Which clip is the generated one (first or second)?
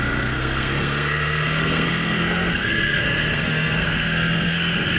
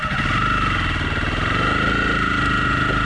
first